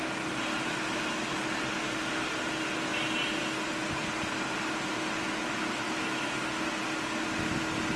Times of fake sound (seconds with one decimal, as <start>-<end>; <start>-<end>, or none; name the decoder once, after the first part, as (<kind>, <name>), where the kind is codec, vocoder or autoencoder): none